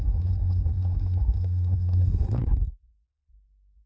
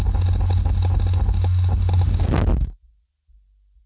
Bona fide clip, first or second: second